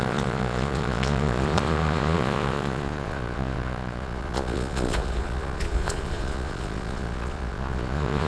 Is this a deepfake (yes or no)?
yes